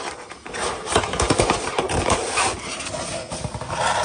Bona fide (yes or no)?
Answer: yes